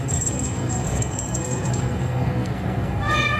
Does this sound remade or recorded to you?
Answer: remade